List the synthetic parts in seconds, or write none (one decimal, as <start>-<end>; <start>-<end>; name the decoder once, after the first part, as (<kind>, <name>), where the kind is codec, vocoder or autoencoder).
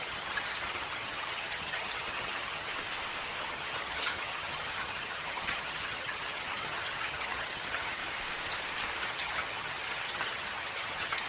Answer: 0.0-2.7 (vocoder, HiFi-GAN); 3.4-8.0; 9.0-11.3